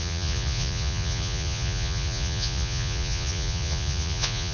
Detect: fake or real fake